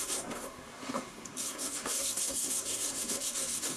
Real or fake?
fake